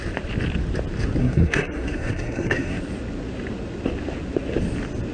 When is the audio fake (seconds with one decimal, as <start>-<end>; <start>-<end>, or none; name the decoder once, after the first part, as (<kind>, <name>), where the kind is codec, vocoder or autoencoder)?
1.2-2.8 (codec, SNAC)